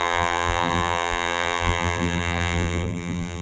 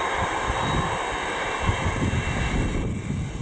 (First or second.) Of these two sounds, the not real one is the first